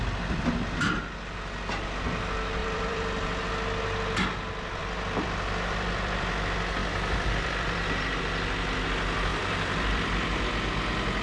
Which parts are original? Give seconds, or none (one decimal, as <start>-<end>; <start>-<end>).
0.0-2.6; 3.5-4.8; 6.3-6.8; 8.2-9.3; 10.4-11.2